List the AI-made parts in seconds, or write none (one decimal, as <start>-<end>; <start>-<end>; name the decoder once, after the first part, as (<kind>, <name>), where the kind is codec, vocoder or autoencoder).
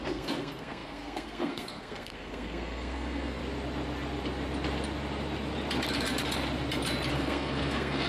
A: 0.0-3.4 (codec, SNAC); 7.1-8.1